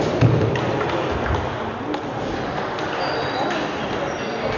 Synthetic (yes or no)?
no